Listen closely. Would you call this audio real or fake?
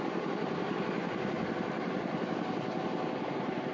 real